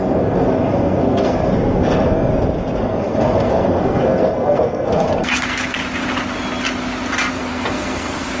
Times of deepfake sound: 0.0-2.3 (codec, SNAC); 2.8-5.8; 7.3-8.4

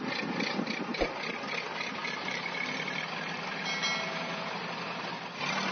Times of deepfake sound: none

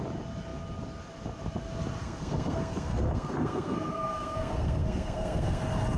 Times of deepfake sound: 2.0-5.6 (codec, SNAC)

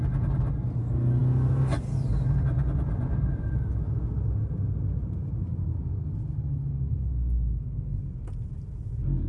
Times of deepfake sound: 6.9-8.0 (codec, SNAC)

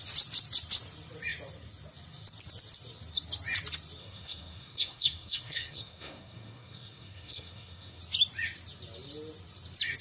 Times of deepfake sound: 4.0-8.0 (codec, SNAC)